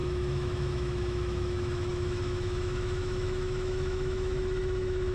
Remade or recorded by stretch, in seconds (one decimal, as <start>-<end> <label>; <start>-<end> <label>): 0.0-5.1 remade